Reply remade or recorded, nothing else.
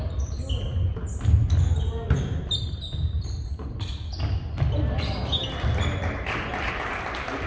recorded